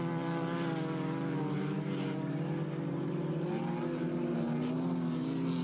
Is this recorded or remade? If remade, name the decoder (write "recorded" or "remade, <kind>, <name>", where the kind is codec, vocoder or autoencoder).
recorded